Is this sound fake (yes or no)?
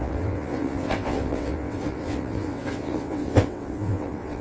yes